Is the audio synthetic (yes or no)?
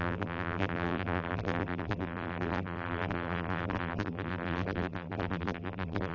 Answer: yes